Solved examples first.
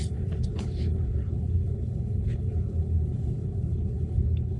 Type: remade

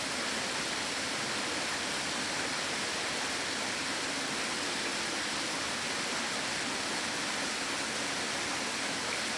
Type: recorded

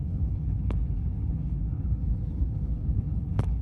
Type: remade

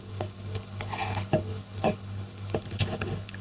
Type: remade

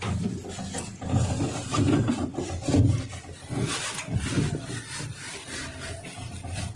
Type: recorded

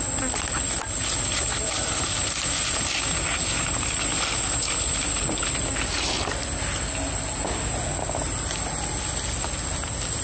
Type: recorded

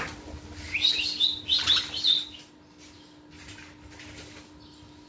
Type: recorded